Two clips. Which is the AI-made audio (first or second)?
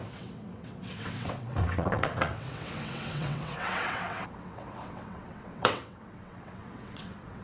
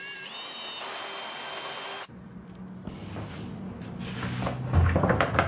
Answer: first